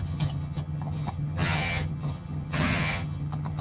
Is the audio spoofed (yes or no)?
yes